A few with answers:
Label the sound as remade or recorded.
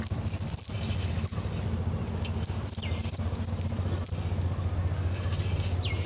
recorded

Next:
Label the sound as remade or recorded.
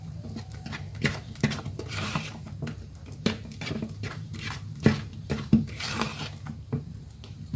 remade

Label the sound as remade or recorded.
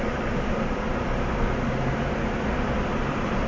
remade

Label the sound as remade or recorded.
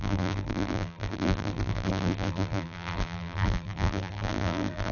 remade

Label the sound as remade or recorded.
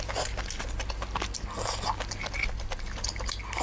recorded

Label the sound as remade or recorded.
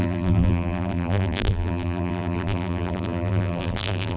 remade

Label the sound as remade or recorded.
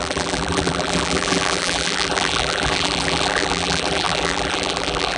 remade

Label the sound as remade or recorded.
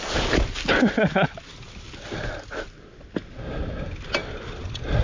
recorded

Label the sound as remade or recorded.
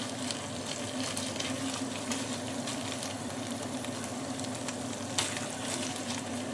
remade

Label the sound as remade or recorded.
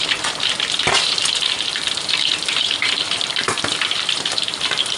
remade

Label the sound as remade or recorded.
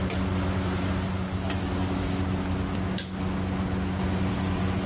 recorded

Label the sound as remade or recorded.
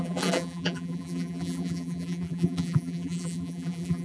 remade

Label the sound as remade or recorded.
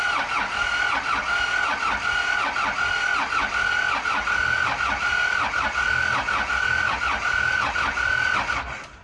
recorded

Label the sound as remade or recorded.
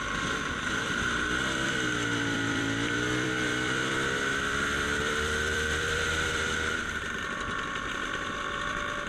remade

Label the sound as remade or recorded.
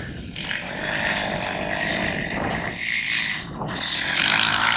remade